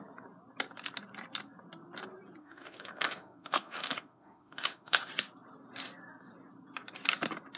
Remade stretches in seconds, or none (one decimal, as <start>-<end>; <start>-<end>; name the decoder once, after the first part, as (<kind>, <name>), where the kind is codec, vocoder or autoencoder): 2.4-5.0 (autoencoder, DAC-VAE)